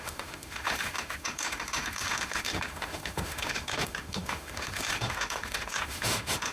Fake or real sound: fake